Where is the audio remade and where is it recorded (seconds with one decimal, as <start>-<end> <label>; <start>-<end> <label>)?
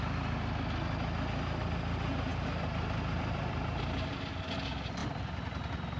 0.0-6.0 recorded